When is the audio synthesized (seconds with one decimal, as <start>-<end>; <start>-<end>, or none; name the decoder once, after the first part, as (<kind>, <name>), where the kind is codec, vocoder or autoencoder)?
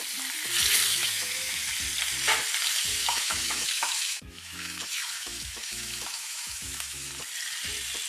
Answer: 0.9-1.7 (autoencoder, DAC-VAE); 2.9-7.1